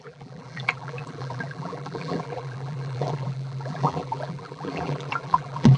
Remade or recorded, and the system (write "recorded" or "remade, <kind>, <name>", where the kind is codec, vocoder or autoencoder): remade, vocoder, BigVGAN v2